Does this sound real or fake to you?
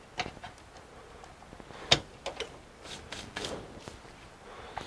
real